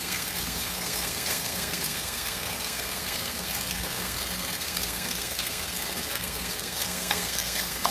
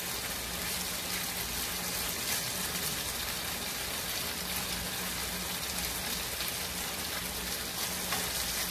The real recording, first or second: second